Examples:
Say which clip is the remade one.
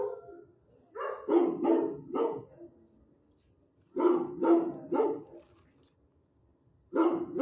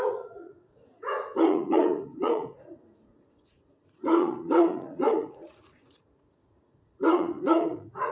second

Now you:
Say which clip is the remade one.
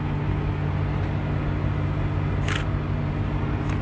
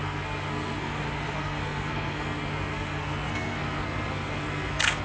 second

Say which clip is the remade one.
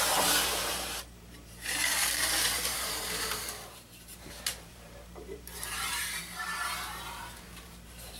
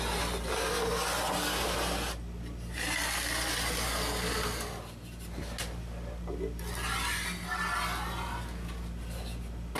first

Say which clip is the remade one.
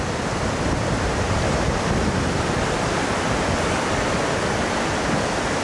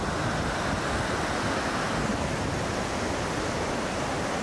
first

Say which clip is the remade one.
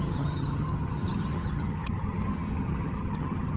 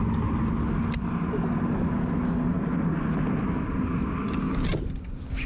first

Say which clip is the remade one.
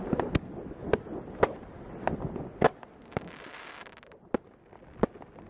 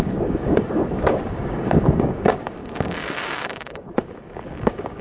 second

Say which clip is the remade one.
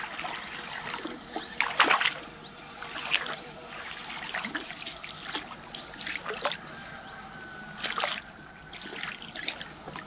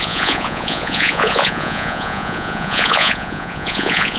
second